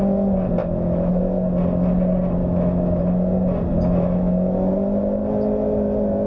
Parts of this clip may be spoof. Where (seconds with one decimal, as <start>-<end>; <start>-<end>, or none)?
0.6-1.1; 2.4-3.0; 3.7-4.7